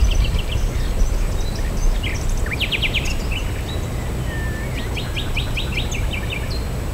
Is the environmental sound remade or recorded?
recorded